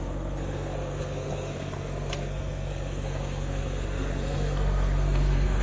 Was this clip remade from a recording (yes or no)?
yes